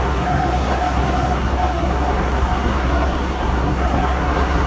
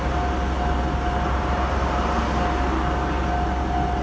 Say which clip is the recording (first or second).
second